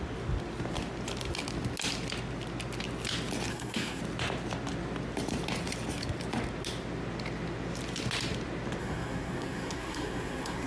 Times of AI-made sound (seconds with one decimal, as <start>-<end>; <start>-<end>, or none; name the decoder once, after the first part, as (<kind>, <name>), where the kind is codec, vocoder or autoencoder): 3.5-4.0 (codec, SNAC); 8.8-10.7